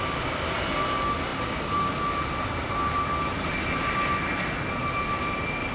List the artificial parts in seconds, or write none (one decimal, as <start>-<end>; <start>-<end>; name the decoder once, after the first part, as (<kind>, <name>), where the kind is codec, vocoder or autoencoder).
none